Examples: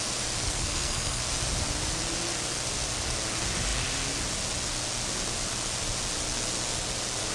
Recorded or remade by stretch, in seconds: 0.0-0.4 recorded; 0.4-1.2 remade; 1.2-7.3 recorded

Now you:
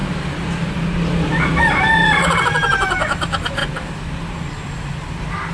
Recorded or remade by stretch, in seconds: 0.0-5.5 recorded